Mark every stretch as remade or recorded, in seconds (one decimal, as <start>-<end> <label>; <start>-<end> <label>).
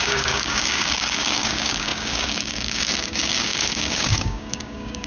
0.0-5.1 remade